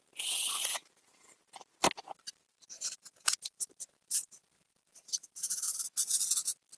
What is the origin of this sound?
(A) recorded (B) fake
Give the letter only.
B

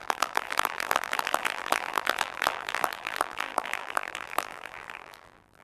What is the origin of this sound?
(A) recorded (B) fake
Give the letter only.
B